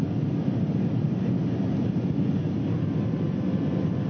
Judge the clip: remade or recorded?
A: recorded